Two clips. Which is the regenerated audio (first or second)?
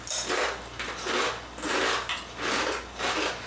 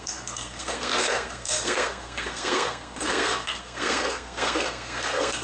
second